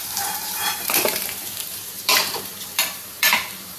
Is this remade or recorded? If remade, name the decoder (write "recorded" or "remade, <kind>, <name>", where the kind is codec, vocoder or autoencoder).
remade, vocoder, BigVGAN v2